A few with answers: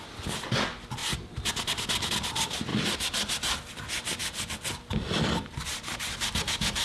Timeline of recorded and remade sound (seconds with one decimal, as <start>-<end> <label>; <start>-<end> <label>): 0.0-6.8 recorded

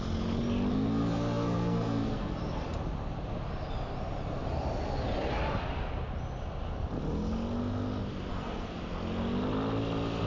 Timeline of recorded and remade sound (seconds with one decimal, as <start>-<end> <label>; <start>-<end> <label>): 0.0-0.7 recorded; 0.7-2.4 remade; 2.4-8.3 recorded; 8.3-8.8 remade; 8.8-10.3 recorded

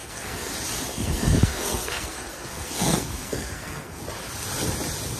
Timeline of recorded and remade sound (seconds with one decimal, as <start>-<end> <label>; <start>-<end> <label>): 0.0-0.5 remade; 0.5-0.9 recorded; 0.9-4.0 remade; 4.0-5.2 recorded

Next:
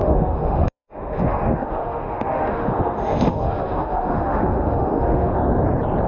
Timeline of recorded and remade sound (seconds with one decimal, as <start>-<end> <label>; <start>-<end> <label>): 0.0-5.4 remade; 5.4-6.1 recorded